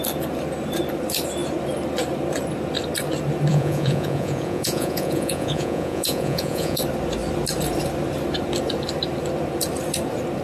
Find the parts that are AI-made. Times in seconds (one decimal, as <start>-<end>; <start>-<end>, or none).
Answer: 3.5-6.8